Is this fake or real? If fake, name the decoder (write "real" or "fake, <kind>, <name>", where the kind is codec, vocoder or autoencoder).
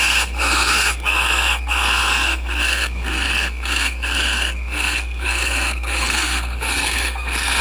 fake, codec, SNAC